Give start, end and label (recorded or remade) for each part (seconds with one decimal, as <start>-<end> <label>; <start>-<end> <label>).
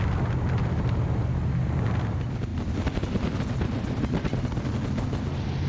0.0-5.7 recorded